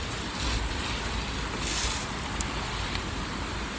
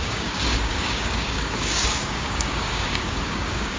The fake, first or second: second